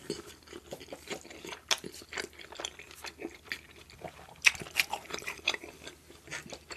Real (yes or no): yes